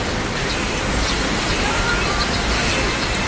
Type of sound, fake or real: real